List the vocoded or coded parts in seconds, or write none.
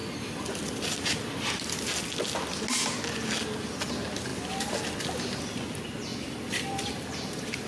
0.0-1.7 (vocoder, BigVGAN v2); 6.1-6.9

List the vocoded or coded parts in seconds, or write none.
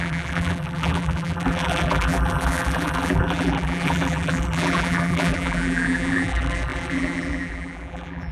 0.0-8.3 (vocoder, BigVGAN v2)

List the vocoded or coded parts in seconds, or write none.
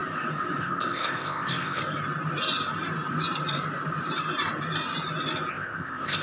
0.6-1.8 (codec, ZipCodec); 5.5-6.2